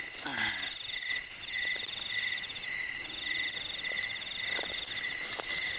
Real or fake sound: real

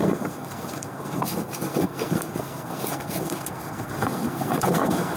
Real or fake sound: fake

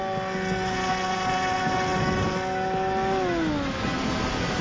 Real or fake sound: real